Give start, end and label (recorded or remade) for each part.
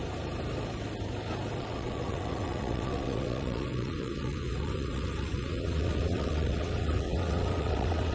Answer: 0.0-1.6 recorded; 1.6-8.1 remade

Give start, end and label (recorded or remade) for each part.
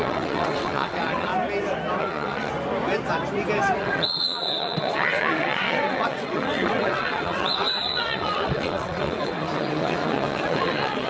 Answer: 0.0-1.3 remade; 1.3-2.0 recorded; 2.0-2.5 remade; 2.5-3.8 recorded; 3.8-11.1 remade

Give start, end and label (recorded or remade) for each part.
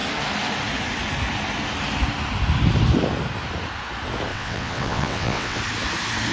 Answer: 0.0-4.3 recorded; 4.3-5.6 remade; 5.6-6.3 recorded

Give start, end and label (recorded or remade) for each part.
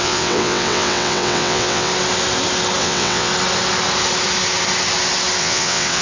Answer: 0.0-1.9 remade; 1.9-2.8 recorded; 2.8-3.3 remade; 3.3-5.4 recorded; 5.4-6.0 remade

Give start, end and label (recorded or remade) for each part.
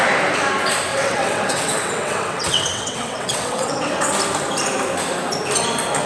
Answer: 0.0-0.9 recorded; 0.9-4.1 remade; 4.1-6.1 recorded